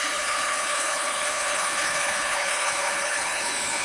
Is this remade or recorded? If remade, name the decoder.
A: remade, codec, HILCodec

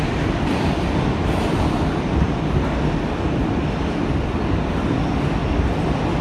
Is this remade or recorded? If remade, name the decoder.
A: recorded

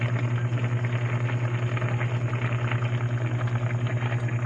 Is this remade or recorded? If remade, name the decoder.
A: recorded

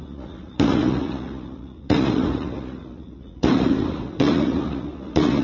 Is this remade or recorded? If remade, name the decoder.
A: remade, vocoder, Vocos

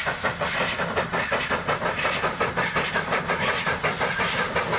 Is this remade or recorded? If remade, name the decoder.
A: recorded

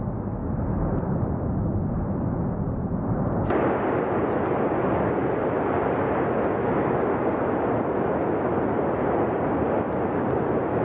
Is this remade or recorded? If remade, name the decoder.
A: recorded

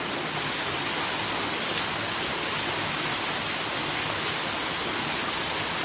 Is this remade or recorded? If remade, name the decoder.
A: recorded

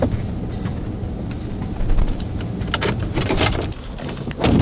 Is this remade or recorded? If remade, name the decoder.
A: recorded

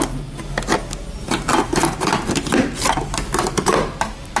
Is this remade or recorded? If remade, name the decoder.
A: recorded